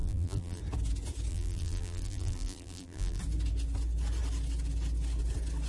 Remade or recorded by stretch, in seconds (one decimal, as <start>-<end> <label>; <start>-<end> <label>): 0.0-0.6 remade; 0.6-1.3 recorded; 1.3-3.2 remade; 3.2-5.7 recorded